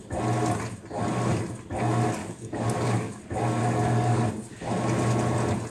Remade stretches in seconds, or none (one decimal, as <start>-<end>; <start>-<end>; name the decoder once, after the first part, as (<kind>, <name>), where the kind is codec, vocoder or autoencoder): 2.2-3.2 (codec, DAC); 3.6-4.3